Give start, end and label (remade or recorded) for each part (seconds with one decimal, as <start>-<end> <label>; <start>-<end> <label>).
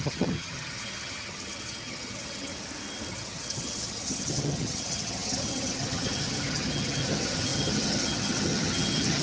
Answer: 0.0-2.5 remade; 2.5-3.1 recorded; 3.1-9.2 remade